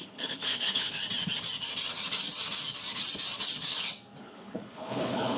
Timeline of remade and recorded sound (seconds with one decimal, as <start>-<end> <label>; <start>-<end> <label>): 0.0-1.0 remade; 1.0-4.2 recorded; 4.2-5.4 remade